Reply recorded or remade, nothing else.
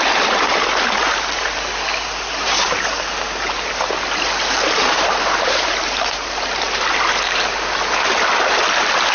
recorded